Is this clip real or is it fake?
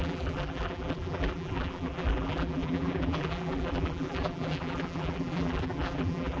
fake